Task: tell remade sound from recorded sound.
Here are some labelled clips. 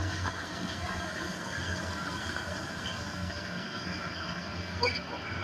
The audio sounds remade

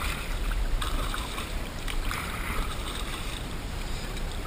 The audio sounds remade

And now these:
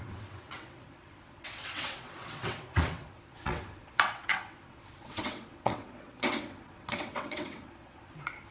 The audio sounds remade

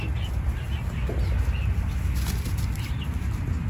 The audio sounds recorded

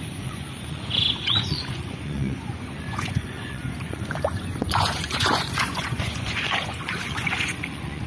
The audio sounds remade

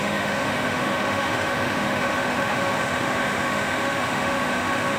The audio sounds remade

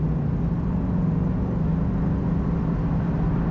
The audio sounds recorded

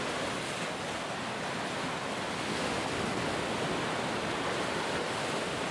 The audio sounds recorded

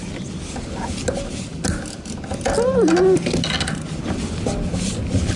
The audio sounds recorded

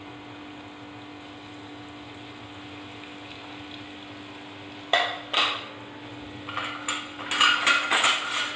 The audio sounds recorded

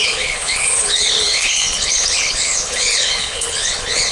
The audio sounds remade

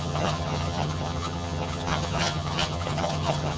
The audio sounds remade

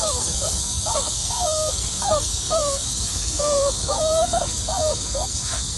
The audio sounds remade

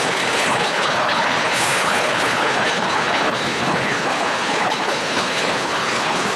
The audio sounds remade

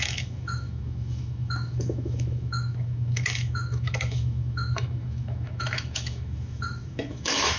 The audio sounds remade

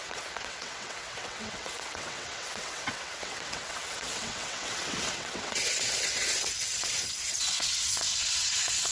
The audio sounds remade